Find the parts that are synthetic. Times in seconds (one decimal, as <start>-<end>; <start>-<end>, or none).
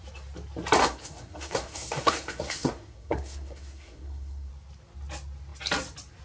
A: 0.8-4.5